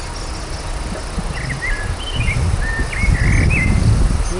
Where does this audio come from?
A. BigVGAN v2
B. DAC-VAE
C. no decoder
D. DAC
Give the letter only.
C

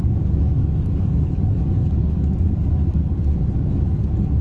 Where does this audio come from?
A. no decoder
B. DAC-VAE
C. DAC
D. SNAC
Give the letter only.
C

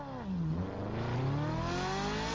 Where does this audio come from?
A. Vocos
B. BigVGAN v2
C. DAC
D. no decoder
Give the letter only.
D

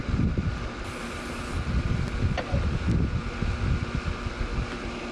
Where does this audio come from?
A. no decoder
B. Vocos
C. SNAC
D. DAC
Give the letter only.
A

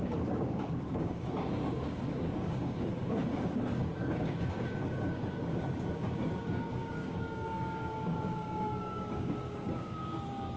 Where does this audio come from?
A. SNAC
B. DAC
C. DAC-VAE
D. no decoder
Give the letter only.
B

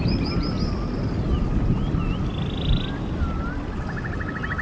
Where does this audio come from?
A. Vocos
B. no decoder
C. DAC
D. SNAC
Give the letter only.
B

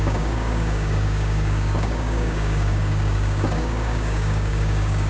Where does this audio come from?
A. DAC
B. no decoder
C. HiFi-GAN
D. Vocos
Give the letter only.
A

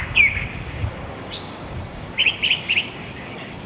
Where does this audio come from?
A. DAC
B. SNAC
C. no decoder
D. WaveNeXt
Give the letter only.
A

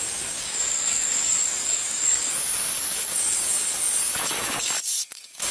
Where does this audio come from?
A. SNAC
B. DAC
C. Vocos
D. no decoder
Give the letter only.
B